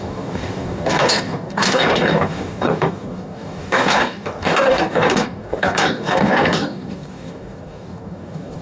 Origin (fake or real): fake